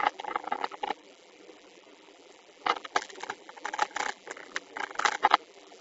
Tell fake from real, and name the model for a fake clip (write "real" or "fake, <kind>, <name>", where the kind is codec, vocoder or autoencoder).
fake, vocoder, BigVGAN v2